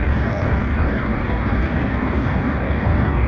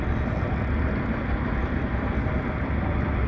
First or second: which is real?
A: second